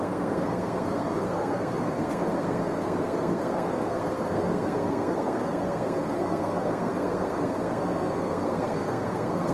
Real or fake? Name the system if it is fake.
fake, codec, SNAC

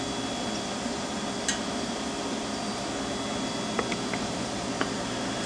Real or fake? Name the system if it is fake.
real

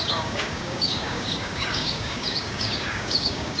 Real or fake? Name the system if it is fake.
fake, codec, DAC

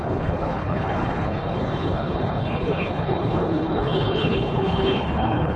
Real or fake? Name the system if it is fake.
fake, codec, HILCodec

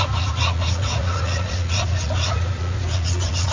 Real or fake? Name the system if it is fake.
fake, vocoder, Vocos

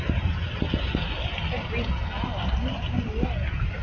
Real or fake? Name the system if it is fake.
real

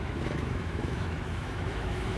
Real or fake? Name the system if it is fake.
fake, autoencoder, DAC-VAE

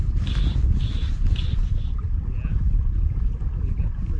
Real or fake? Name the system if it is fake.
real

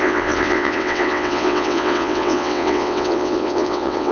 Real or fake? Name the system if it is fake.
fake, vocoder, WaveNeXt